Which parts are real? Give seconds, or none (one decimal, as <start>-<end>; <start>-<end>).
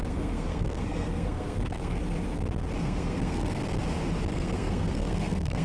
2.0-2.8; 3.6-4.3